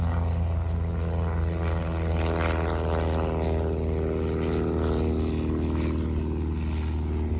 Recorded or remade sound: recorded